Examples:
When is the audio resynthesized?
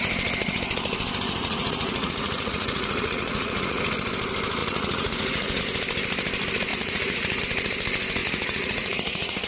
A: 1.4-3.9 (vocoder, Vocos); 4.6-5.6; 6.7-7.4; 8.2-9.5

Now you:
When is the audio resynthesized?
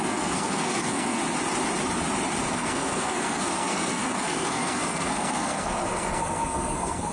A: 0.0-1.2 (codec, SNAC); 2.5-7.1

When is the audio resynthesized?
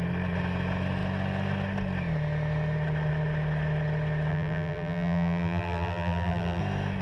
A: 4.3-6.6 (vocoder, BigVGAN v2)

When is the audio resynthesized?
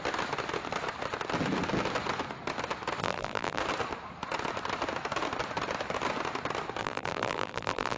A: 3.0-3.6 (vocoder, BigVGAN v2); 6.8-8.0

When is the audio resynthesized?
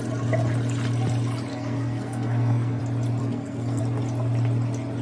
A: 1.5-2.8 (codec, SNAC); 3.2-3.8